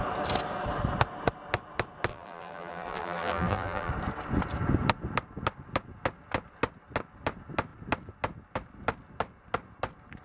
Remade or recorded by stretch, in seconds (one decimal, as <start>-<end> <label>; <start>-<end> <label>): 0.0-2.1 recorded; 2.1-3.9 remade; 3.9-10.2 recorded